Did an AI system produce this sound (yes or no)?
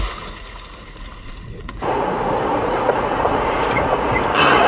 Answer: yes